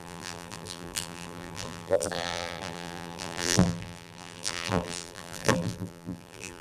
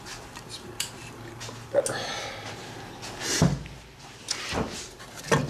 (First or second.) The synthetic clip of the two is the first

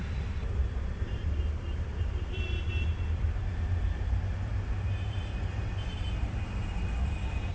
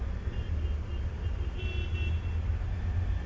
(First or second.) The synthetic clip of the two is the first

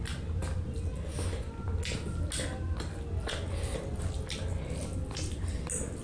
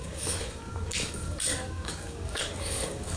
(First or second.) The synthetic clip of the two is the second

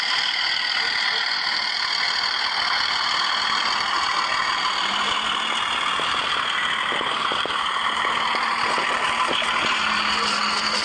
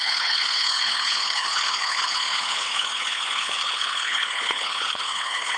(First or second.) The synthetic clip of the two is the second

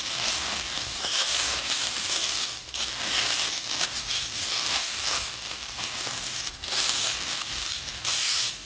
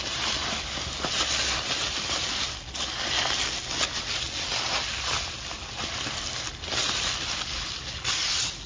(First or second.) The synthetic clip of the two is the first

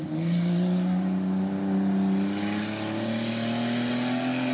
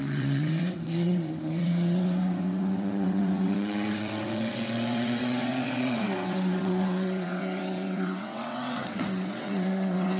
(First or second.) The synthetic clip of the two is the second